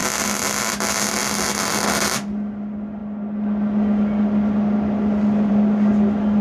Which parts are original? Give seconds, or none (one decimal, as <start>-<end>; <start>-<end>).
0.0-6.4